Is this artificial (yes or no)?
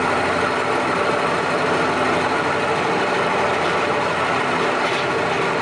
no